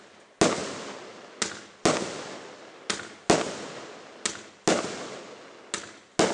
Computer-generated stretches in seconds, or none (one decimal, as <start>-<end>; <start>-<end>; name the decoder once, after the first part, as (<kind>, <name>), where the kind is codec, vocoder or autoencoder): none